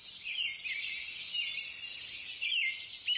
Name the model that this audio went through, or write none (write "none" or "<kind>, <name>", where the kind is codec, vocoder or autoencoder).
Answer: none